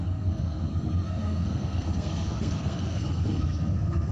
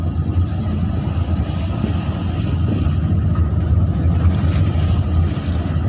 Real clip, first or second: second